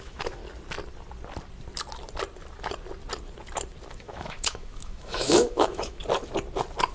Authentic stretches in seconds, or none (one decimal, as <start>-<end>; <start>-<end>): 0.4-3.9; 6.0-6.9